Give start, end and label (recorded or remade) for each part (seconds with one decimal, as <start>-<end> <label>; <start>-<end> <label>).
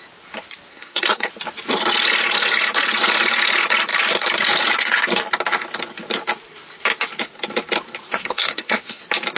0.0-0.7 recorded; 0.7-1.3 remade; 1.3-8.1 recorded; 8.1-9.0 remade; 9.0-9.4 recorded